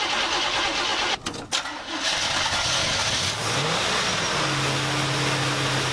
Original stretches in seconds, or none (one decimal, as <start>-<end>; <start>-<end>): 0.0-5.9